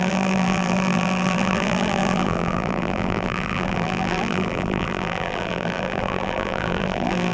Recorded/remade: remade